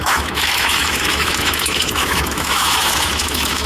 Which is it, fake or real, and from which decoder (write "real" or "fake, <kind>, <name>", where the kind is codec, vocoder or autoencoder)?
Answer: fake, autoencoder, DAC-VAE